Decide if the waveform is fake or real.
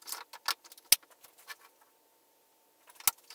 real